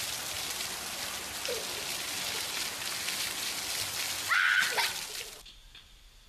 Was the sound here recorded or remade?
recorded